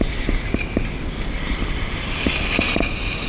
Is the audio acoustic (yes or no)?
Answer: yes